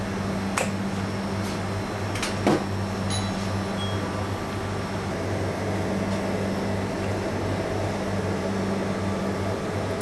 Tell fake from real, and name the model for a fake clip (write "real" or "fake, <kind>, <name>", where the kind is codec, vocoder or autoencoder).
real